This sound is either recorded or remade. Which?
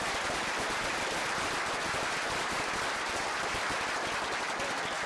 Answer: recorded